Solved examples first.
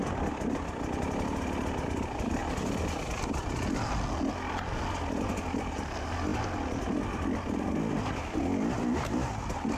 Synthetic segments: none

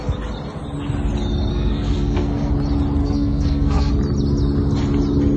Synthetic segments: 1.5-2.5 (codec, SNAC); 3.0-3.9

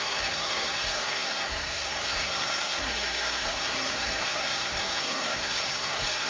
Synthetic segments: 0.0-6.3 (codec, SNAC)

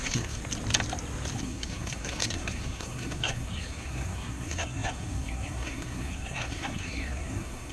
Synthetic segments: 0.0-0.4 (codec, SNAC); 1.4-7.7

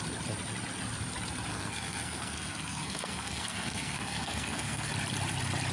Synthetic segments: 1.5-4.9 (codec, SNAC)

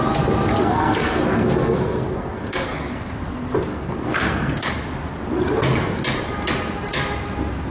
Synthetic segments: 0.6-3.1 (codec, SNAC); 3.7-4.7

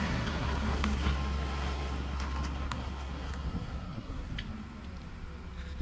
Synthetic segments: 0.0-4.3 (codec, SNAC)

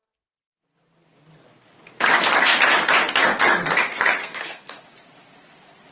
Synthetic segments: 4.2-4.9 (codec, SNAC)